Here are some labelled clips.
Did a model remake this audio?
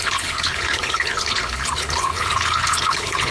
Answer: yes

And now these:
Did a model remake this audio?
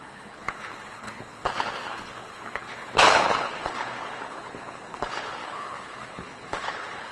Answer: yes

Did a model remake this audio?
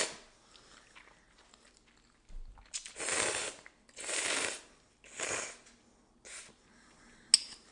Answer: no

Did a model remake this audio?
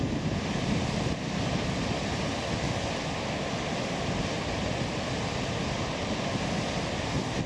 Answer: no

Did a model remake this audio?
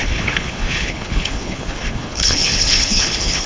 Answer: yes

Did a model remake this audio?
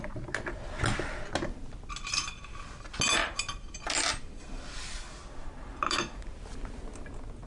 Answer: no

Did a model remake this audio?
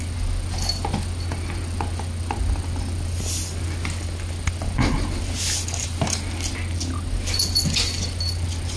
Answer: no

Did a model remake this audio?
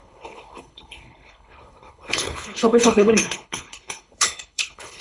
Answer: yes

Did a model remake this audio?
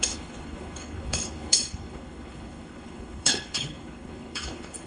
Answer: yes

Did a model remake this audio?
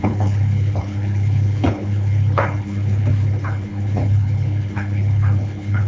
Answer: yes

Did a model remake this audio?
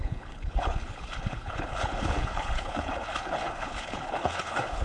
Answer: yes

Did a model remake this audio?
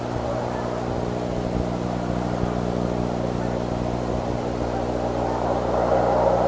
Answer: no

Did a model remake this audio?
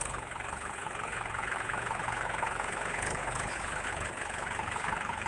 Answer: yes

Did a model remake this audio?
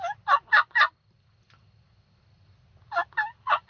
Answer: no